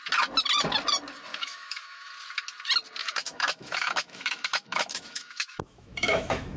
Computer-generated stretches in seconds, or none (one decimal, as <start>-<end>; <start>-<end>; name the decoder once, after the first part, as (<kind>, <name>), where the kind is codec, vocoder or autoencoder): 1.3-2.1 (autoencoder, DAC-VAE); 3.0-6.6